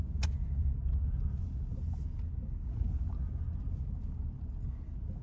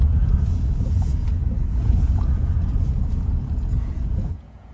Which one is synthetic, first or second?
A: second